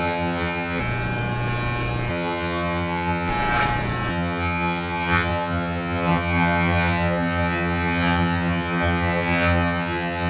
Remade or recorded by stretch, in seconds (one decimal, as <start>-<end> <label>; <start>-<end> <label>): 0.0-0.8 remade; 0.8-2.1 recorded; 2.1-3.3 remade; 3.3-4.1 recorded; 4.1-10.3 remade